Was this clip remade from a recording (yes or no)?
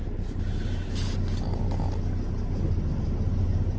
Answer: no